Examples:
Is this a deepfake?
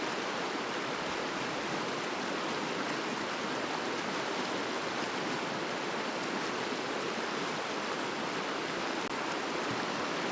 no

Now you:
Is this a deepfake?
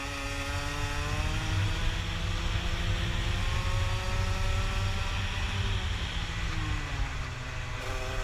no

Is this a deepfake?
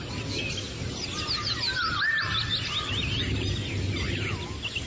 no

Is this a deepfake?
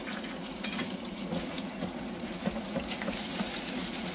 yes